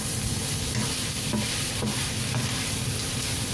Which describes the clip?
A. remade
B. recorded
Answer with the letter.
B